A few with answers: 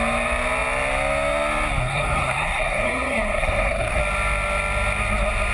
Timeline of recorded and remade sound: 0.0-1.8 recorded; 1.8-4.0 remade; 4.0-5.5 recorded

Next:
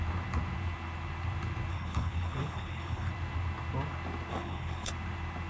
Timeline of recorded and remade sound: 0.0-1.7 recorded; 1.7-3.1 remade; 3.1-4.3 recorded; 4.3-4.9 remade; 4.9-5.5 recorded

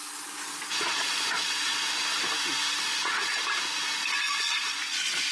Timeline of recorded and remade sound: 0.0-0.8 recorded; 0.8-1.7 remade; 1.7-2.8 recorded; 2.8-3.3 remade; 3.3-4.3 recorded; 4.3-5.3 remade

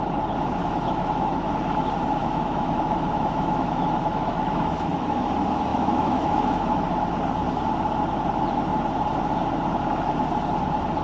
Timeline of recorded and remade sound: 0.0-0.6 recorded; 0.6-1.5 remade; 1.5-2.2 recorded; 2.2-5.2 remade; 5.2-5.7 recorded; 5.7-6.9 remade; 6.9-11.0 recorded

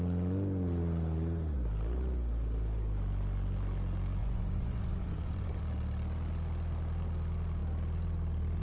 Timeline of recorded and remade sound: 0.0-4.2 recorded; 4.2-5.6 remade; 5.6-8.6 recorded

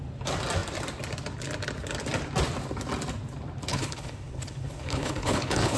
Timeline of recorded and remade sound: 0.0-3.7 recorded; 3.7-5.8 remade